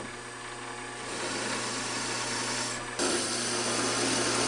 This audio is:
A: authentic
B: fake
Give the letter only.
A